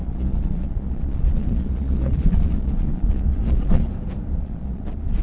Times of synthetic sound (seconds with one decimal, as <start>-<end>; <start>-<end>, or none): 0.0-3.9; 4.4-5.2